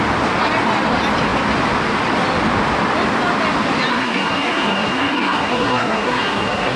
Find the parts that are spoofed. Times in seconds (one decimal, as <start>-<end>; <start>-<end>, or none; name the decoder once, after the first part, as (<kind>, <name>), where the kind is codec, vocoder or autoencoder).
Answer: 3.9-6.8 (codec, SNAC)

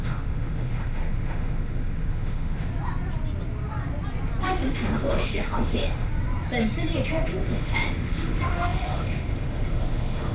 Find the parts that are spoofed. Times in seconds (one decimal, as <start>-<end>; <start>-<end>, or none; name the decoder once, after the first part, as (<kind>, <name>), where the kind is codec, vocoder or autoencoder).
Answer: 0.0-2.7 (autoencoder, DAC-VAE); 4.4-6.1; 7.1-10.3

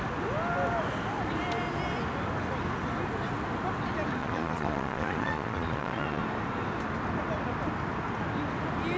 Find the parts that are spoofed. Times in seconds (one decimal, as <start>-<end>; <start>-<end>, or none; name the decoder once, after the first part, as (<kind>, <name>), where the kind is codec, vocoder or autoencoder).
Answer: 4.2-6.2 (vocoder, Vocos)

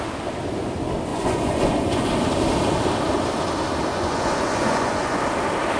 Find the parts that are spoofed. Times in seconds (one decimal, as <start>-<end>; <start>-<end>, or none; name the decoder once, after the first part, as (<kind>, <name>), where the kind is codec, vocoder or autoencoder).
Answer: 1.1-2.1 (vocoder, Vocos); 3.9-5.2